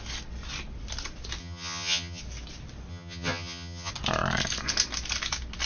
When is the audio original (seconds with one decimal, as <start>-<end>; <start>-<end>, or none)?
0.0-1.4; 2.2-2.9; 3.9-5.7